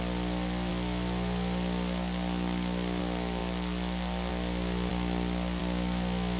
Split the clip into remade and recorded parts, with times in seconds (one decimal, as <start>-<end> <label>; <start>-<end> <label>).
0.0-6.4 recorded